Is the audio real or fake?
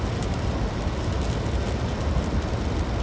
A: real